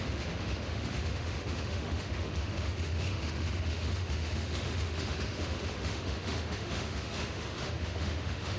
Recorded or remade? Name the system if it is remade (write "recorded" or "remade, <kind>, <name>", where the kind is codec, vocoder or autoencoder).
remade, autoencoder, DAC-VAE